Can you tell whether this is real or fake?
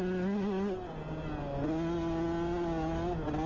real